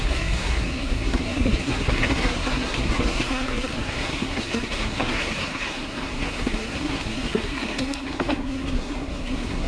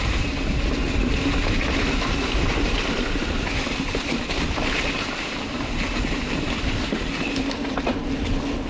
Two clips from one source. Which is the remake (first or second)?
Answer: first